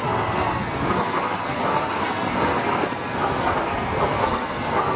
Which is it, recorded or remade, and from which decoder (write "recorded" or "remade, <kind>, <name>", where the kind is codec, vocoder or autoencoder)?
remade, codec, SNAC